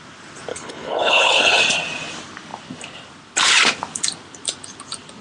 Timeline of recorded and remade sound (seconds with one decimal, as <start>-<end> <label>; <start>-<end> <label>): 0.0-0.5 recorded; 0.5-1.6 remade; 1.6-5.2 recorded